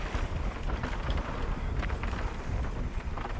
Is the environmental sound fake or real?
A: real